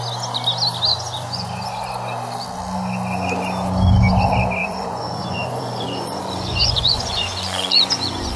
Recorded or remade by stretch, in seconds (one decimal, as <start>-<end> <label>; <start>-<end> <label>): 0.0-0.9 recorded; 0.9-1.8 remade; 1.8-4.6 recorded; 4.6-8.4 remade

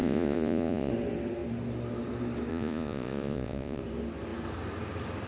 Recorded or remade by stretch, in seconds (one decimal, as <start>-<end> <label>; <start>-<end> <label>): 0.0-0.9 remade; 0.9-2.5 recorded; 2.5-3.8 remade; 3.8-5.3 recorded

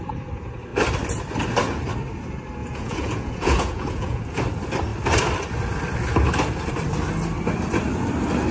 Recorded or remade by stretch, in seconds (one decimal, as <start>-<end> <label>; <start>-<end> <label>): 0.0-2.6 recorded; 2.6-4.2 remade; 4.2-8.5 recorded

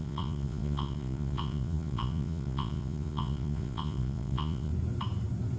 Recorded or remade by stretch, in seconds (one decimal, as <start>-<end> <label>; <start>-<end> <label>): 0.0-4.7 remade; 4.7-5.6 recorded

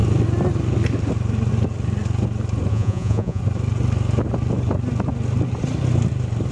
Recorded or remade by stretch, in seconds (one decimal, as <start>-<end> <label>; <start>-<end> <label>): 0.0-2.7 recorded; 2.7-3.4 remade; 3.4-6.5 recorded

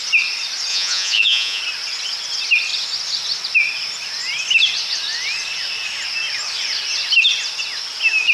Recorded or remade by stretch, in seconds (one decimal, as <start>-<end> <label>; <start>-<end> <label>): 0.0-0.7 recorded; 0.7-1.6 remade; 1.6-8.3 recorded